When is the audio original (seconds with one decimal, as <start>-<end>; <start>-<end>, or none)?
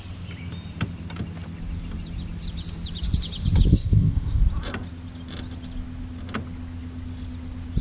0.0-3.7; 4.4-7.8